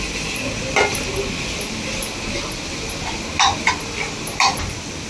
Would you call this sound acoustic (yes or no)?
yes